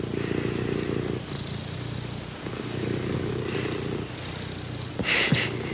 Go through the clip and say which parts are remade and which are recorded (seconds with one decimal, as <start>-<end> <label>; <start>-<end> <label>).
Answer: 0.0-2.5 recorded; 2.5-3.3 remade; 3.3-5.7 recorded